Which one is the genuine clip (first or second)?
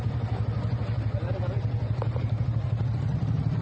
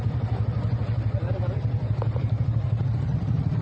first